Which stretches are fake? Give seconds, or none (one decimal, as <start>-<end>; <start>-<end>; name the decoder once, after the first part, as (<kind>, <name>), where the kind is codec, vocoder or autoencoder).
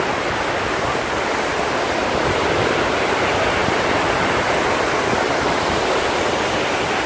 none